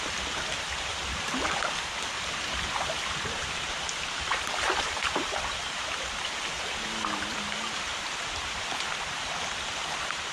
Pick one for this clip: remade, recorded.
recorded